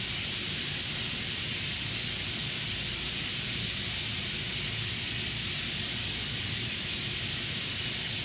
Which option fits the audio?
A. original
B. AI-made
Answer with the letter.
A